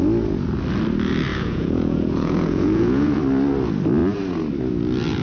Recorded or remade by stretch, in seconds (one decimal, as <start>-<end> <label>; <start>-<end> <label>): 0.0-1.3 recorded; 1.3-3.2 remade; 3.2-5.2 recorded